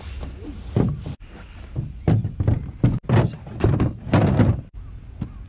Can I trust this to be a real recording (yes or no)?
yes